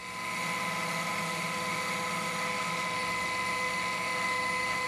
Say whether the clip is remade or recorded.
remade